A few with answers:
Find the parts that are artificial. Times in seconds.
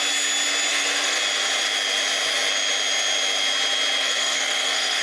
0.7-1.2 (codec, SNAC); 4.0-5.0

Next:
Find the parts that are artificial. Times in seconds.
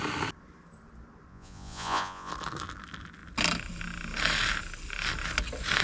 1.3-2.3 (vocoder, Vocos)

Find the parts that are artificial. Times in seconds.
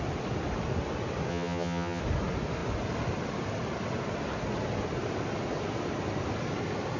1.3-2.0 (vocoder, HiFi-GAN)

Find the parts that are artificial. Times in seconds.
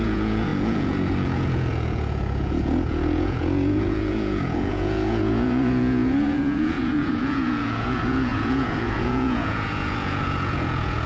0.0-11.1 (vocoder, Vocos)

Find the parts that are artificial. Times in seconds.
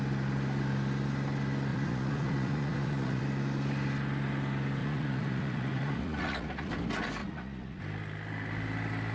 1.7-3.2 (vocoder, Vocos); 4.8-6.7; 7.2-7.8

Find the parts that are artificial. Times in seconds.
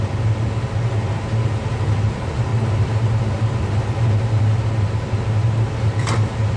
none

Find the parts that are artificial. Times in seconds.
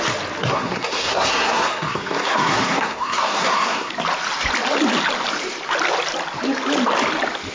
0.4-3.9 (codec, SNAC)